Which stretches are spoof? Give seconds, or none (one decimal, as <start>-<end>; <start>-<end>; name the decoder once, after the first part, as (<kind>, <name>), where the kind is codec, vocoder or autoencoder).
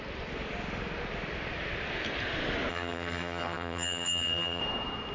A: 2.7-4.6 (vocoder, HiFi-GAN)